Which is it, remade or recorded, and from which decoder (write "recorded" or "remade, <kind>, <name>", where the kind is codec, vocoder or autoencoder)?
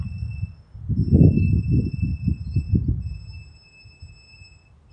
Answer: recorded